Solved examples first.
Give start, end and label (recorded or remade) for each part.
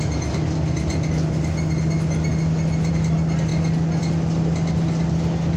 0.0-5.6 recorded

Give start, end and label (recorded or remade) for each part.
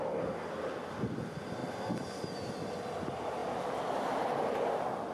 0.0-5.1 recorded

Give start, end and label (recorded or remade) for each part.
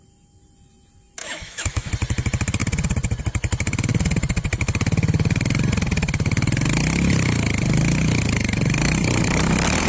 0.0-1.2 recorded; 1.2-1.9 remade; 1.9-9.9 recorded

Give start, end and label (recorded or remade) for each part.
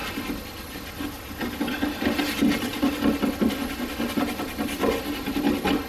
0.0-5.9 recorded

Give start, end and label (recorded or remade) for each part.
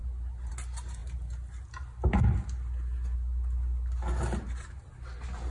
0.0-5.5 recorded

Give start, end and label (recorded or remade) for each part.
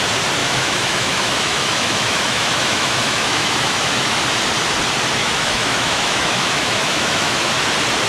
0.0-0.4 recorded; 0.4-4.2 remade; 4.2-5.2 recorded; 5.2-7.5 remade; 7.5-8.1 recorded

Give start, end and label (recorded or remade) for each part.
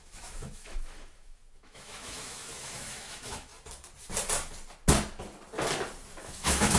0.0-3.5 remade; 3.5-6.2 recorded; 6.2-6.8 remade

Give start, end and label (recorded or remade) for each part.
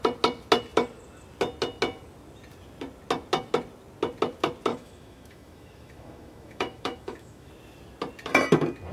0.0-4.7 recorded; 4.7-7.5 remade; 7.5-8.9 recorded